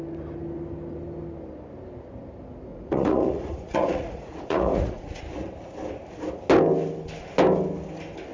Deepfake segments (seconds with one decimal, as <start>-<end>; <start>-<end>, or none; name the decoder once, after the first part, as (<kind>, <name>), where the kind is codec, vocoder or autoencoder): 2.7-5.2 (vocoder, Vocos)